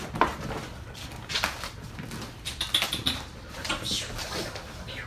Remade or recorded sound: recorded